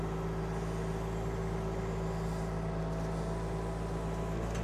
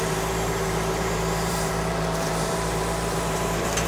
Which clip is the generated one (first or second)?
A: second